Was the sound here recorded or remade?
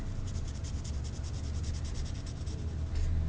recorded